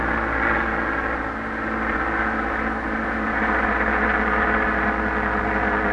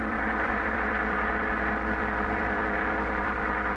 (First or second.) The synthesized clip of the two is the second